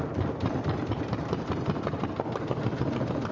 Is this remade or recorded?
remade